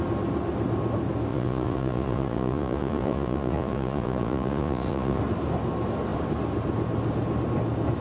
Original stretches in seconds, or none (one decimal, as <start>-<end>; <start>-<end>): 0.0-1.3; 5.2-8.0

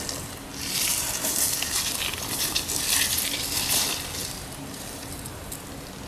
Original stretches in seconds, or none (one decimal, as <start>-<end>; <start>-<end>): 0.0-0.5; 3.7-4.2; 5.5-6.1

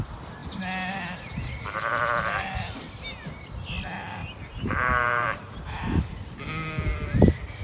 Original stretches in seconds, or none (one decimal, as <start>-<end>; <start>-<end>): 0.0-4.2; 6.0-7.6

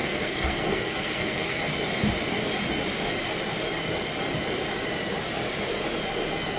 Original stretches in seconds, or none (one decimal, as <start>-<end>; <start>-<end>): 1.6-6.6

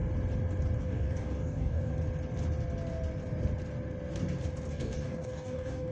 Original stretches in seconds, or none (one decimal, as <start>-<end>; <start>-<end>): 0.0-0.8; 1.9-4.7

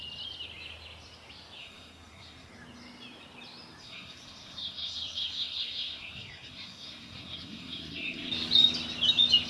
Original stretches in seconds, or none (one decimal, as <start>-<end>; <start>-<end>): 0.0-1.6; 2.5-3.8; 8.3-9.5

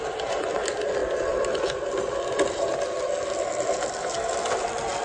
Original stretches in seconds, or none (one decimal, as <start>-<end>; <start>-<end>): 0.0-5.0